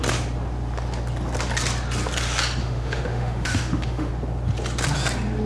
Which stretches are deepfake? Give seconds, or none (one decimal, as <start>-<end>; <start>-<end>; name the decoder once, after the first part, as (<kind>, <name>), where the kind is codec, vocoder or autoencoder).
2.6-4.1 (autoencoder, DAC-VAE)